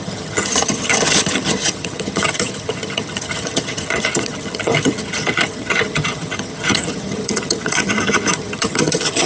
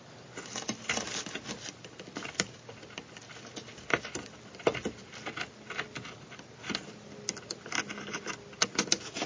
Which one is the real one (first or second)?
second